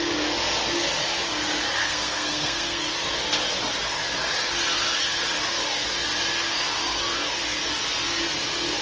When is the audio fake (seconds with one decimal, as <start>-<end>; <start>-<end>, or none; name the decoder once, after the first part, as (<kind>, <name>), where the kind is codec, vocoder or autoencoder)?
1.8-2.9 (codec, SNAC)